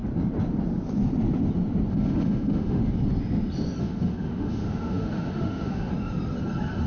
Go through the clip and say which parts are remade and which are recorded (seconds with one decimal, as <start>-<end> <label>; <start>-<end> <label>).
0.0-1.9 recorded; 1.9-2.8 remade; 2.8-3.8 recorded; 3.8-5.9 remade; 5.9-6.9 recorded